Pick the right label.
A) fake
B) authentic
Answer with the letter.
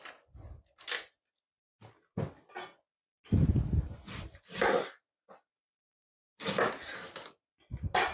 B